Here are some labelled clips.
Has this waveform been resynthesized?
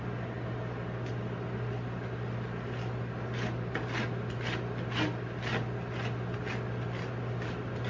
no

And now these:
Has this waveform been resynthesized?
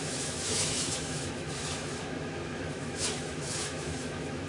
yes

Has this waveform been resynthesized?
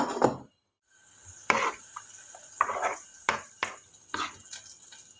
yes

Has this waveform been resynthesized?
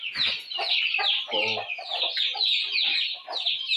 no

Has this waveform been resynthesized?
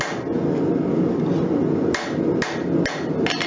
no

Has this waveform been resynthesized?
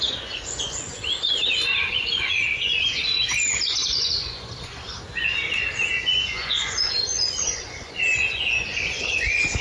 yes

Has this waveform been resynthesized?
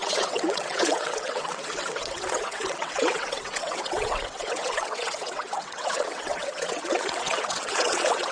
yes